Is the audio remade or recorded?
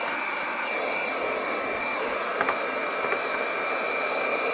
recorded